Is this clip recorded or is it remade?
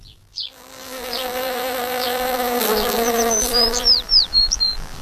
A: remade